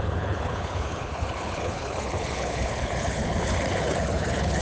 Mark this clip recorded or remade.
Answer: remade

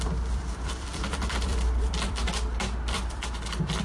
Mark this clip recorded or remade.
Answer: remade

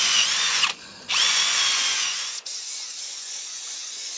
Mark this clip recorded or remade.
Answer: remade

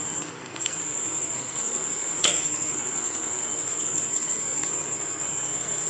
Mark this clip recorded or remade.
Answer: remade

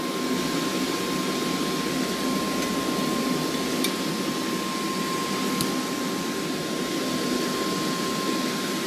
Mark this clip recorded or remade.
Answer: recorded